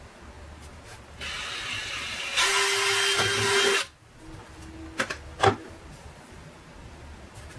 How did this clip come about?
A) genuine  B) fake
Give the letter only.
A